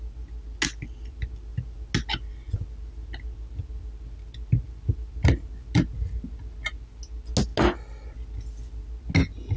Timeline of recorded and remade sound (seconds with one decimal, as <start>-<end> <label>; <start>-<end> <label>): 0.0-9.6 recorded

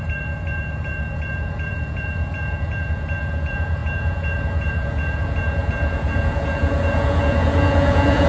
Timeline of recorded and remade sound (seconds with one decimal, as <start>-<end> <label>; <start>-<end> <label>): 0.0-8.3 remade

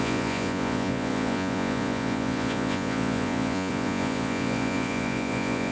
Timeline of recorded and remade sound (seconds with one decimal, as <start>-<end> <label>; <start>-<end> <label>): 0.0-5.7 remade

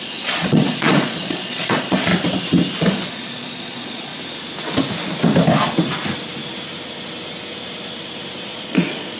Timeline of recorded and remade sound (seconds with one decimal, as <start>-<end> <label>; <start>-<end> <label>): 0.0-2.1 remade; 2.1-2.8 recorded; 2.8-4.1 remade; 4.1-8.4 recorded; 8.4-9.2 remade

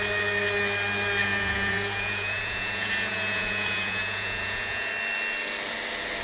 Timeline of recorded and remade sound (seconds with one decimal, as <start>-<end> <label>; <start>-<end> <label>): 0.0-1.2 recorded; 1.2-4.9 remade; 4.9-6.2 recorded

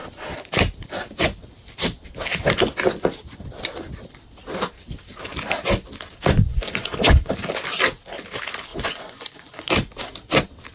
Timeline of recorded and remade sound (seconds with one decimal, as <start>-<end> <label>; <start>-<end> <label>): 0.0-6.5 recorded; 6.5-7.3 remade; 7.3-8.7 recorded; 8.7-9.7 remade; 9.7-10.7 recorded

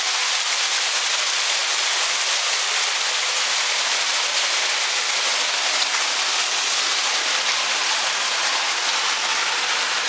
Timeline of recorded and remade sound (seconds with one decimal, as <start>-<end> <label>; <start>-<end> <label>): 0.0-10.1 recorded

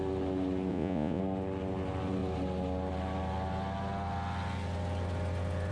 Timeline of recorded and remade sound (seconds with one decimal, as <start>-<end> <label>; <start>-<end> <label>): 0.0-0.7 recorded; 0.7-1.2 remade; 1.2-5.7 recorded